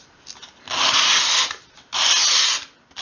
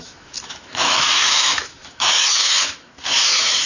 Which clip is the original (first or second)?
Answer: first